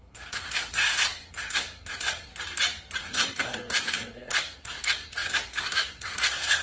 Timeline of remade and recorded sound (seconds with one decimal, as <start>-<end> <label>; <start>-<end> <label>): 0.0-2.3 remade; 2.3-3.0 recorded; 3.0-6.6 remade